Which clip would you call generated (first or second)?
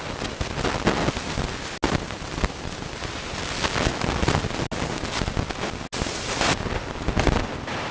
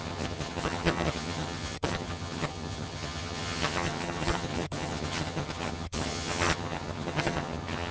second